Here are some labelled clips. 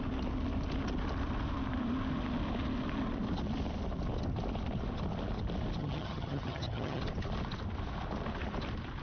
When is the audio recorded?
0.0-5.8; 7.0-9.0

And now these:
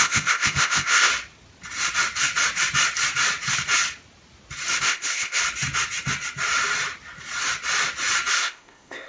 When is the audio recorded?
1.1-4.8; 5.4-8.3

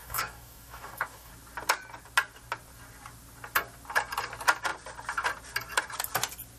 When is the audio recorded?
1.3-6.6

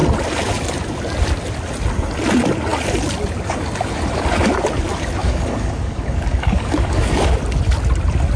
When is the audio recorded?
0.0-5.2; 7.3-8.4

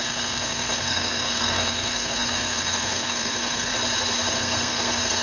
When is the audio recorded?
3.7-4.3

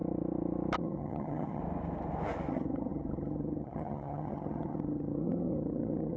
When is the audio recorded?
0.0-0.8; 1.6-2.5

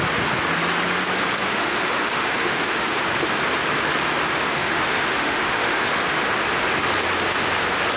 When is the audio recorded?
0.0-1.5; 3.0-4.6; 5.9-8.0